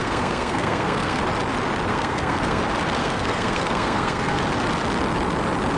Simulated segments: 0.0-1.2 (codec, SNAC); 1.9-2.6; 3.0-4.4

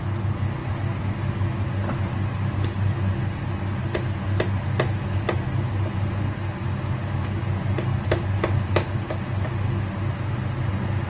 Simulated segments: none